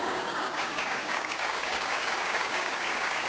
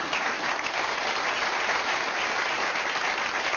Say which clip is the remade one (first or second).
first